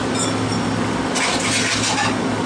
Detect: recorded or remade recorded